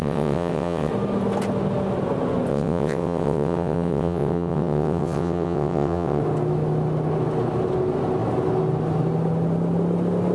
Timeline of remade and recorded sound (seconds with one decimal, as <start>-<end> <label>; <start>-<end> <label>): 0.0-0.9 remade; 0.9-2.5 recorded; 2.5-6.2 remade; 6.2-10.3 recorded